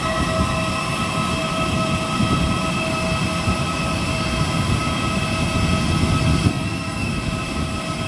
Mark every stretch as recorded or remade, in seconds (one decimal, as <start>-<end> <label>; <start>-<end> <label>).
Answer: 0.0-6.5 recorded; 6.5-7.1 remade; 7.1-8.1 recorded